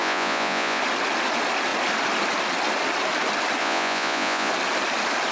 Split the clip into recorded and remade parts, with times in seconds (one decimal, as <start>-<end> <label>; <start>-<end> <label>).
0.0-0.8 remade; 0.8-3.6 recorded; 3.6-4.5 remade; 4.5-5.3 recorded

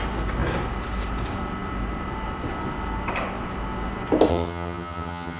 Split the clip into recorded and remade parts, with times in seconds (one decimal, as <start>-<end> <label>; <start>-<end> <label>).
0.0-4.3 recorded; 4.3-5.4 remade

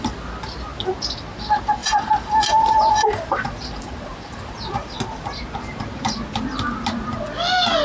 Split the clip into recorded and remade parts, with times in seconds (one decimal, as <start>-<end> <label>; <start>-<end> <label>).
0.0-1.8 recorded; 1.8-5.0 remade; 5.0-7.8 recorded

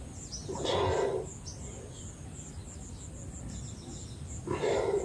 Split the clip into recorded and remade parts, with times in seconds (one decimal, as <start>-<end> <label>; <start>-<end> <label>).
0.0-5.0 recorded

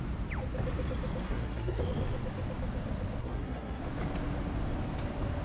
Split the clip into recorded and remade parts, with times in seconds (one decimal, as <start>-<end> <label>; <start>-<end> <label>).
0.0-1.2 recorded; 1.2-1.8 remade; 1.8-3.2 recorded; 3.2-3.8 remade; 3.8-5.4 recorded

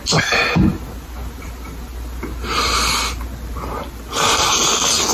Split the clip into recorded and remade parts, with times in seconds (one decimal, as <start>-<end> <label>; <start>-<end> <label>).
0.0-5.1 recorded

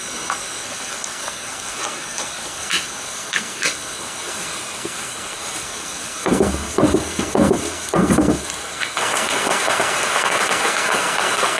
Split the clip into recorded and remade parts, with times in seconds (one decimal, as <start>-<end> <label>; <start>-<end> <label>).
0.0-11.6 remade

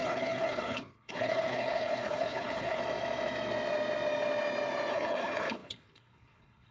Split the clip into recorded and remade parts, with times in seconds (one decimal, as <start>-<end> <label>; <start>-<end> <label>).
0.0-2.8 remade; 2.8-4.9 recorded; 4.9-6.7 remade